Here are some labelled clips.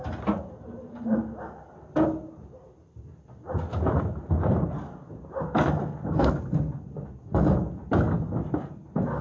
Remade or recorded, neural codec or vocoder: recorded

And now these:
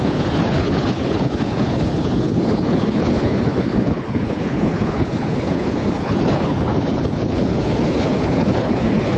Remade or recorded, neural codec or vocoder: remade, codec, HILCodec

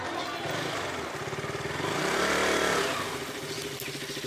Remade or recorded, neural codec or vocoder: recorded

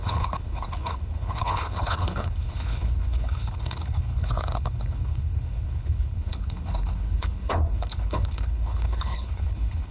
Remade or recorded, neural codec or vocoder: remade, codec, HILCodec